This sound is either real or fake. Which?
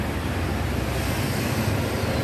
real